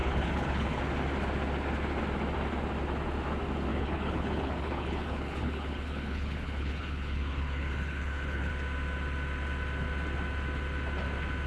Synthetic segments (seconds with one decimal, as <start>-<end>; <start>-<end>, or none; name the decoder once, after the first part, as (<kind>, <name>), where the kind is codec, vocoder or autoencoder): 0.0-0.8 (codec, HILCodec); 3.7-8.5